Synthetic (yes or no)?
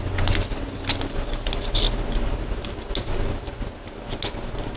no